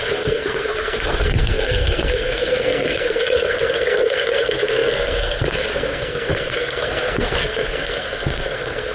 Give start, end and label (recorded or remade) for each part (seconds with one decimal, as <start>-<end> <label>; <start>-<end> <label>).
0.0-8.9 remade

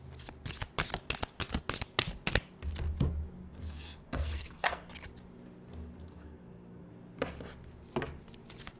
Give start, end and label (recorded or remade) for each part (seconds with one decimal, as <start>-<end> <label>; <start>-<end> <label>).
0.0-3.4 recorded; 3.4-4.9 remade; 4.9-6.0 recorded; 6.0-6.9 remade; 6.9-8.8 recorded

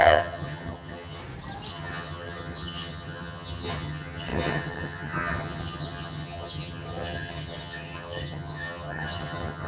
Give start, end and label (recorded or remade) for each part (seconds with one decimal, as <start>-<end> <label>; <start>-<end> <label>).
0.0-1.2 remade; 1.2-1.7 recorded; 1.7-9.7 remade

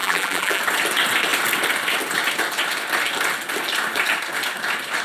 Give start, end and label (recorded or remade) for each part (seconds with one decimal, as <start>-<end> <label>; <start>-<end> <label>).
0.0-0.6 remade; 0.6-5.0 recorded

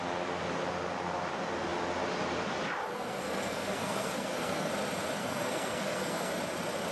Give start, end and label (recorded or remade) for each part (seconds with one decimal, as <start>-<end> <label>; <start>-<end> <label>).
0.0-2.9 recorded; 2.9-4.7 remade; 4.7-5.2 recorded; 5.2-6.3 remade; 6.3-6.9 recorded

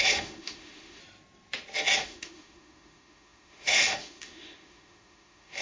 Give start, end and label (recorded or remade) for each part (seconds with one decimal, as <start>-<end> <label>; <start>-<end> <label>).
0.0-1.0 remade; 1.0-2.0 recorded; 2.0-5.6 remade

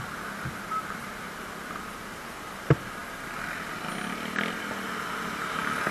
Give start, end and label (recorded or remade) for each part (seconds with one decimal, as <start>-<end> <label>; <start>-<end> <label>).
0.0-5.9 recorded

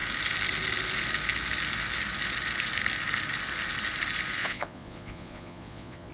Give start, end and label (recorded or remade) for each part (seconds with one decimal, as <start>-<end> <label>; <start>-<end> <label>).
0.0-4.4 recorded; 4.4-6.1 remade